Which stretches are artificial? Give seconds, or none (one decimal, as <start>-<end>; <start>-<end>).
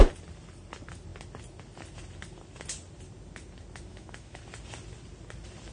3.9-4.4